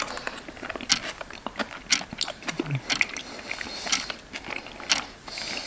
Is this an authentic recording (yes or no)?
yes